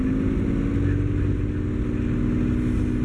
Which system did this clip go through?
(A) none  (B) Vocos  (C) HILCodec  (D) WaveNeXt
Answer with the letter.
A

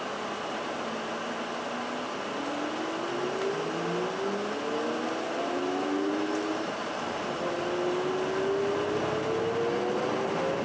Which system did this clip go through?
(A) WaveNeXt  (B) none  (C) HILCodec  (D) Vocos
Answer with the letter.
B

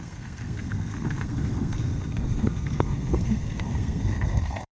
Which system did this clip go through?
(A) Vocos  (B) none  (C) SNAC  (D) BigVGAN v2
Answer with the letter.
C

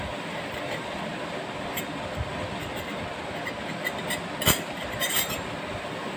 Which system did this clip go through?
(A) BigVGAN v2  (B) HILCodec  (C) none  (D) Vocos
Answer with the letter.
C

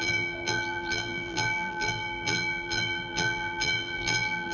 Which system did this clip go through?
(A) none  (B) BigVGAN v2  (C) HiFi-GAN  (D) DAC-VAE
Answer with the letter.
B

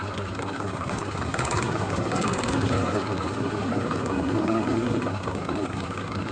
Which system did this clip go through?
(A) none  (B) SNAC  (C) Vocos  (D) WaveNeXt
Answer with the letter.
B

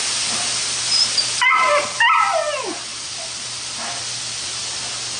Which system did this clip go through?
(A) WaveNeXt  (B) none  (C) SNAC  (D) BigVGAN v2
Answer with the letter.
B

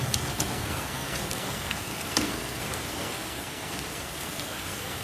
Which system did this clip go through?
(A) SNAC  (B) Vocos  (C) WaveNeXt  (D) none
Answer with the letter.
A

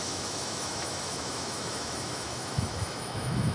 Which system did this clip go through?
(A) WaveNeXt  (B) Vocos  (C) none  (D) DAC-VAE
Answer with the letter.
D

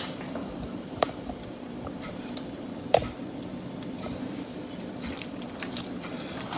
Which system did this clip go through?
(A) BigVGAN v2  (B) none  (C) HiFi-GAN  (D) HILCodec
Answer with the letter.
A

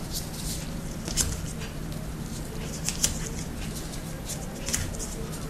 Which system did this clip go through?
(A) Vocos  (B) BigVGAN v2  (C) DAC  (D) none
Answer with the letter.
D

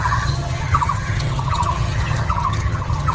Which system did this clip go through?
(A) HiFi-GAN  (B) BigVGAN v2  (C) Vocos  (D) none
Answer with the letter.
A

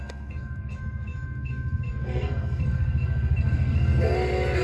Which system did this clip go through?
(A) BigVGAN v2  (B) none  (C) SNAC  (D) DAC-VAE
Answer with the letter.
C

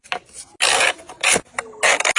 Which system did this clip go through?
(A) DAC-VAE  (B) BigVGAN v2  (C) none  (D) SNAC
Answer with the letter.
C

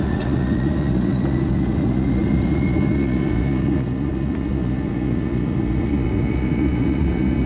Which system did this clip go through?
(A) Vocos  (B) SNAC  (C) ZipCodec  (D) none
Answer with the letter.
A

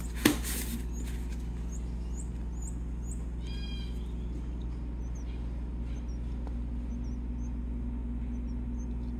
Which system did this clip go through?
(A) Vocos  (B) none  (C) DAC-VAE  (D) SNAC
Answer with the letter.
B